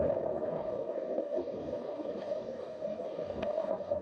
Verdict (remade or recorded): remade